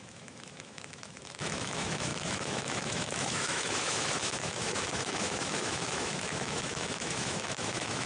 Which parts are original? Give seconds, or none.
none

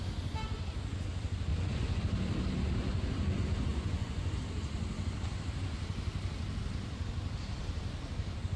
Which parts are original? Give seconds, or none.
0.0-1.5; 2.0-3.7; 4.3-8.6